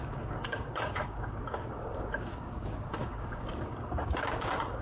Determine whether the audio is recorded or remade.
remade